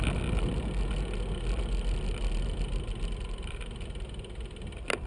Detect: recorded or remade recorded